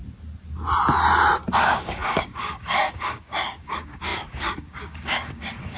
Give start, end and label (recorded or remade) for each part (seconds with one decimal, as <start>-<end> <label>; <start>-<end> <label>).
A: 0.0-1.5 recorded; 1.5-5.8 remade